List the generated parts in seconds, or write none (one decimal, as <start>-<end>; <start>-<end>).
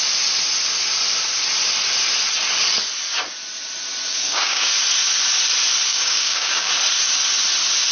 4.1-4.7; 5.9-6.7